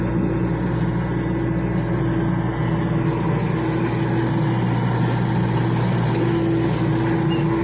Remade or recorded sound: recorded